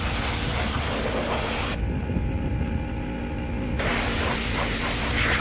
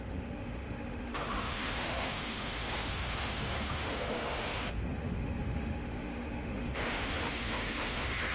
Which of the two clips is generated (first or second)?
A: second